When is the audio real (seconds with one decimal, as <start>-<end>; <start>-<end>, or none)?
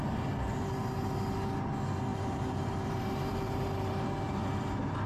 0.0-2.1; 4.4-5.1